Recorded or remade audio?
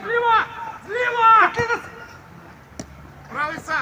recorded